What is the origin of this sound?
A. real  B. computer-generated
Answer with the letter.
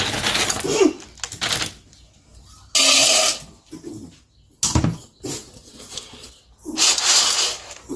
A